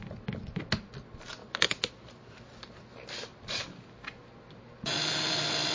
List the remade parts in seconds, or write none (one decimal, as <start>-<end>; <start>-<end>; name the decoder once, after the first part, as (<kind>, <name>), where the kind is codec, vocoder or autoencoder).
none